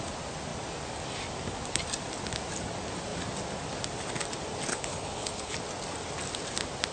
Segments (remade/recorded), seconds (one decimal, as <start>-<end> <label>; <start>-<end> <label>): 0.0-4.7 recorded; 4.7-5.5 remade; 5.5-6.9 recorded